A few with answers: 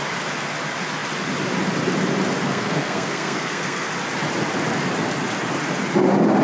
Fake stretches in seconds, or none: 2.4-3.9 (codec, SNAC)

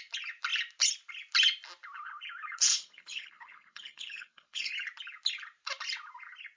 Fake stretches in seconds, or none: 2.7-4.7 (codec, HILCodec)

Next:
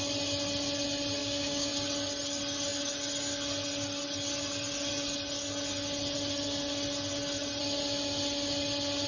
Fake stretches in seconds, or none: 1.2-1.7 (codec, DAC)

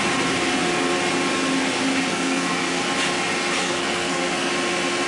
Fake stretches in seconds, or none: 2.1-2.8 (codec, SNAC); 3.6-4.5